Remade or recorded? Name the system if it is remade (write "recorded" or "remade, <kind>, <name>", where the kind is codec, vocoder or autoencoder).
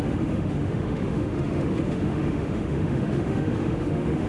remade, autoencoder, DAC-VAE